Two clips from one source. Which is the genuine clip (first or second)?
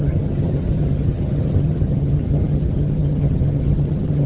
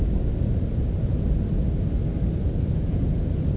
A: second